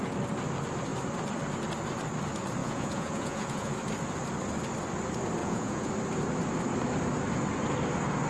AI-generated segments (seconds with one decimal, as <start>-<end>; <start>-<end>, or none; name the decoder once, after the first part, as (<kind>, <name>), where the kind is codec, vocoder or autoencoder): 2.6-3.7 (vocoder, Vocos); 5.4-5.9